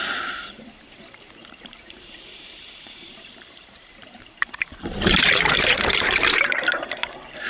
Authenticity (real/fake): fake